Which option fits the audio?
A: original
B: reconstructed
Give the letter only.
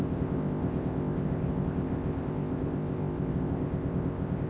B